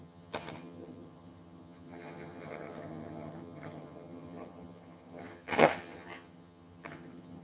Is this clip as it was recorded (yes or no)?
no